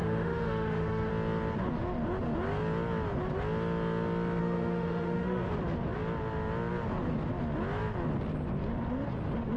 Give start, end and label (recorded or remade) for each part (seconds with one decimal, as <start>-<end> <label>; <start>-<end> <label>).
0.0-1.1 remade; 1.1-4.4 recorded; 4.4-5.5 remade; 5.5-9.6 recorded